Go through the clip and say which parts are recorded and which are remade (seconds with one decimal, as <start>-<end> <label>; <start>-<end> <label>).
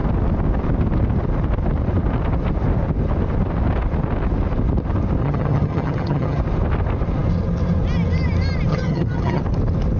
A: 0.0-5.2 recorded; 5.2-6.4 remade; 6.4-8.7 recorded; 8.7-9.4 remade; 9.4-10.0 recorded